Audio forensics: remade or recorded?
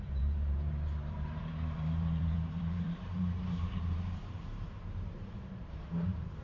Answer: remade